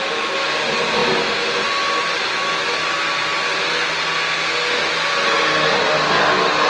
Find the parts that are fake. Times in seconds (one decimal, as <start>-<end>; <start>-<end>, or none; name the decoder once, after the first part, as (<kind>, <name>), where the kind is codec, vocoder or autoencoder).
none